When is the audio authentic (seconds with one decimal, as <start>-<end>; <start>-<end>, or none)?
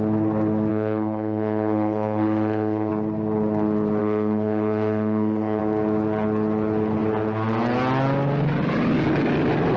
0.0-0.7; 2.9-4.0; 5.6-9.8